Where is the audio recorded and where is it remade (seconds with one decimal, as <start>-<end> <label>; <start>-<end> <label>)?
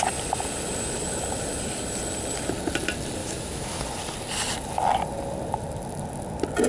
0.0-3.2 recorded; 3.2-3.8 remade; 3.8-6.7 recorded